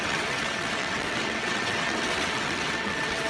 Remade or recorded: remade